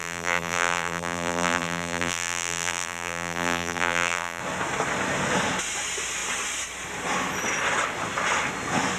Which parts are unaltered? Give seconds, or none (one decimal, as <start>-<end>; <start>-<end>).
4.4-9.0